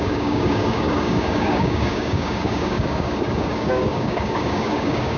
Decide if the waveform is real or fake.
fake